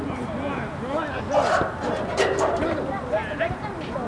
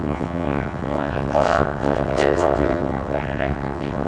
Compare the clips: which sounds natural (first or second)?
first